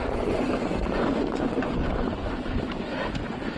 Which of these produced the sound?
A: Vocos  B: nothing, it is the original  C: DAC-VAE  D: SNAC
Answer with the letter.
A